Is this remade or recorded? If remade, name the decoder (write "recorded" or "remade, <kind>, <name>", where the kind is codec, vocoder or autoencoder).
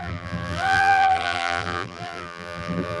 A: remade, vocoder, BigVGAN v2